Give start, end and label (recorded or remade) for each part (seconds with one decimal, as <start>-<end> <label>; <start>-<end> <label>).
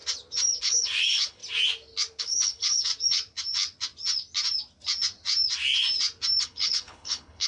0.0-0.6 recorded; 0.6-1.4 remade; 1.4-2.2 recorded; 2.2-2.9 remade; 2.9-6.4 recorded; 6.4-7.5 remade